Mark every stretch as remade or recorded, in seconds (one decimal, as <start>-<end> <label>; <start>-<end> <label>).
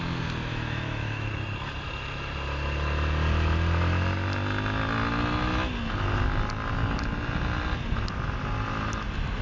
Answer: 0.0-0.5 recorded; 0.5-1.3 remade; 1.3-9.4 recorded